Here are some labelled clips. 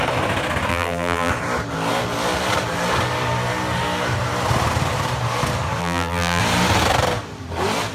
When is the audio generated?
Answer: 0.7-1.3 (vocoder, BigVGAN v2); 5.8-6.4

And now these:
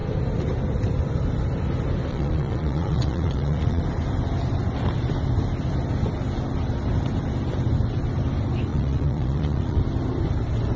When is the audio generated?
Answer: 2.1-3.8 (vocoder, Vocos); 8.7-9.8

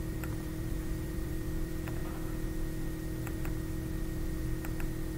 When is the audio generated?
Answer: 0.0-2.0 (vocoder, BigVGAN v2)

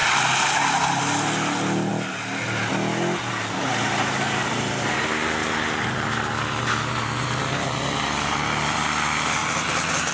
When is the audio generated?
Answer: 4.4-5.3 (vocoder, BigVGAN v2); 9.4-10.1

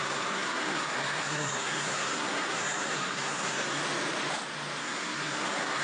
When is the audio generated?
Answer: 0.0-3.8 (codec, SNAC); 4.8-5.8